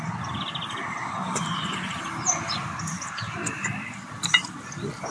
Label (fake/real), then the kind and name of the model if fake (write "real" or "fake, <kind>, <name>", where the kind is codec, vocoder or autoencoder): real